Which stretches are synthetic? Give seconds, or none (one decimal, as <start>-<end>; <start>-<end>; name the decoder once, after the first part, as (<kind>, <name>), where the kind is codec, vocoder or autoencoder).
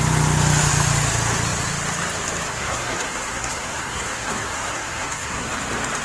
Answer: 2.5-5.5 (codec, SNAC)